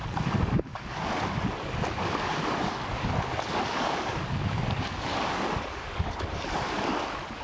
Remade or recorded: remade